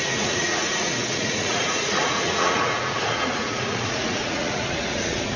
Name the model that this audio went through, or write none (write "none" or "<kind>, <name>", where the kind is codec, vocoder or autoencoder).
vocoder, Vocos